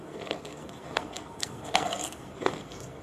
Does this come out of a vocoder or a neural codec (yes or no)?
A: yes